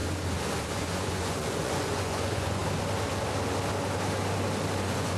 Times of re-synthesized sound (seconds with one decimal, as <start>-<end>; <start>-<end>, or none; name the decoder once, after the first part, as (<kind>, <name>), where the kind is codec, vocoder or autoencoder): 0.7-2.6 (vocoder, Vocos); 4.8-5.2